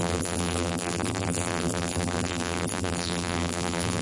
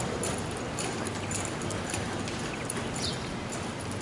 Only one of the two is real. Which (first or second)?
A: second